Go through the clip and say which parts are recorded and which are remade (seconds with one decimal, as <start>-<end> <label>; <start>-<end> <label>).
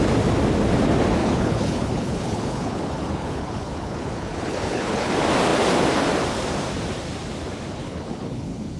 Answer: 0.0-1.2 recorded; 1.2-5.1 remade; 5.1-7.8 recorded; 7.8-8.8 remade